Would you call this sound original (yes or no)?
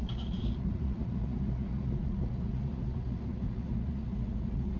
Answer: no